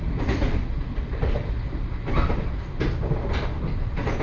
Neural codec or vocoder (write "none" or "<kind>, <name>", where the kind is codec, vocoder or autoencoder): none